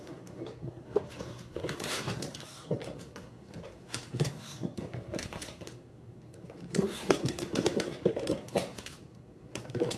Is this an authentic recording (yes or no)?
no